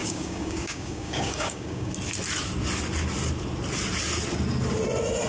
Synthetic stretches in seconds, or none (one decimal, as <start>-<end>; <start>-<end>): 0.0-1.9